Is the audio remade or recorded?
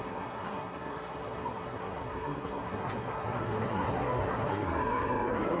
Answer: remade